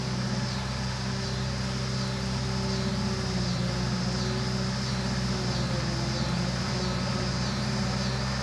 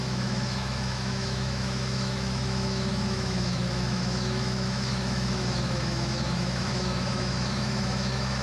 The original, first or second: first